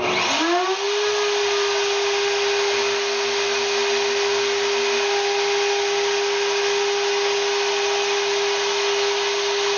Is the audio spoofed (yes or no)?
no